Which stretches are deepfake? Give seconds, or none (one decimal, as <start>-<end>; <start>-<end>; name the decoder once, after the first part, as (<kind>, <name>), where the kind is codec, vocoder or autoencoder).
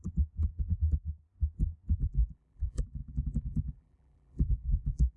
2.0-5.2 (vocoder, BigVGAN v2)